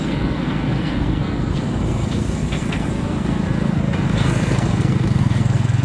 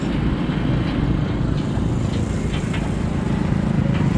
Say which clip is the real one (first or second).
second